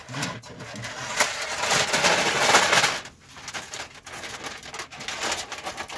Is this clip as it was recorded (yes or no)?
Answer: yes